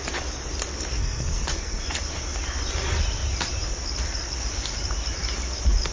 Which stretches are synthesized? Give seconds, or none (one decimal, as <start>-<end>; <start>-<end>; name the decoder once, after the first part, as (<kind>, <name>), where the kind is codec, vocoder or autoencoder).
1.0-1.8 (codec, SNAC)